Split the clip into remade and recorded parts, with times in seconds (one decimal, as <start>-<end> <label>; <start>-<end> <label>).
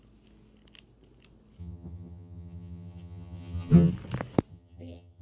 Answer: 0.0-1.6 recorded; 1.6-3.9 remade; 3.9-4.5 recorded; 4.5-5.2 remade